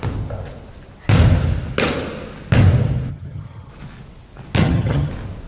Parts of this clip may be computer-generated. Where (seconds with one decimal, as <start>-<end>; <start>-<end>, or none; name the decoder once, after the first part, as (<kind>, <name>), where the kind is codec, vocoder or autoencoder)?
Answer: 3.1-3.7 (vocoder, HiFi-GAN); 4.6-5.1